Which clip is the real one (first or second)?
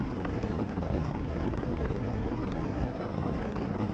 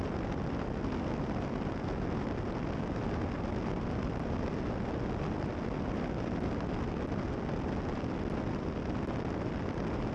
second